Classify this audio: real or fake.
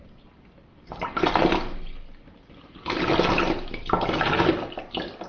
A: real